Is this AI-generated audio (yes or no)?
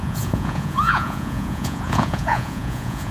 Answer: yes